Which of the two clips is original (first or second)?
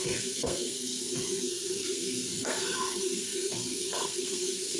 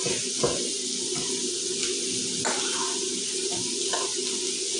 second